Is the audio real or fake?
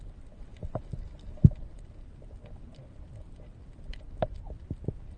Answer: real